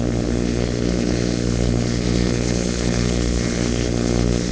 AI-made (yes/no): yes